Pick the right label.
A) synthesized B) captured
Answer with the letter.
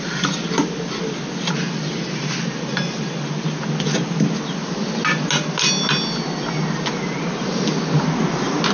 B